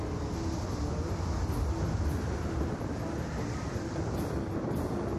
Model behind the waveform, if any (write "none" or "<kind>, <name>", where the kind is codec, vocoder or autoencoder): none